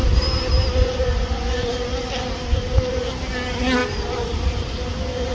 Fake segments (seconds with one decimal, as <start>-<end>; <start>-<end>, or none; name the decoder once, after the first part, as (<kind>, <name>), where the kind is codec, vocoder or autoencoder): 3.8-4.8 (vocoder, BigVGAN v2)